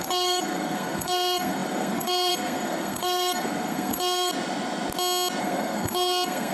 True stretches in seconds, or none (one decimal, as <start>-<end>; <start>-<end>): 4.3-5.4

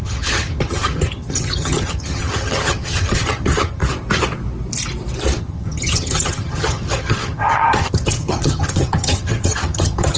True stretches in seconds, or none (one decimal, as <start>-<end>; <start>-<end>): 3.8-5.4

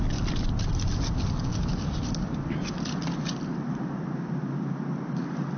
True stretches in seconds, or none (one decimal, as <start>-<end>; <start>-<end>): 0.0-1.5; 2.3-5.6

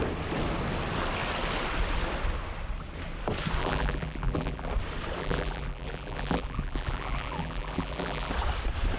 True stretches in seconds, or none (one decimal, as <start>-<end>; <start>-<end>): 0.0-3.6; 4.7-5.2; 8.3-9.0

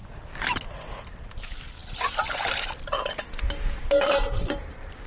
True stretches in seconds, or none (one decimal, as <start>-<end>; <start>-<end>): 0.0-1.1